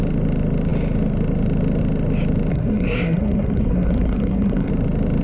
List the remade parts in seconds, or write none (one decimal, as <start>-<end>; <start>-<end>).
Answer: 2.5-4.7